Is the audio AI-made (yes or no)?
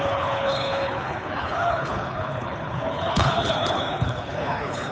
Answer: yes